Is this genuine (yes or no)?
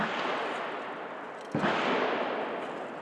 yes